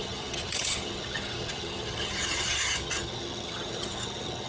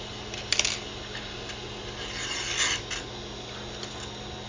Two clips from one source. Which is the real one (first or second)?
second